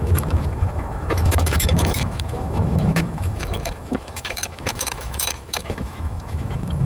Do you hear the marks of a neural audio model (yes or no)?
yes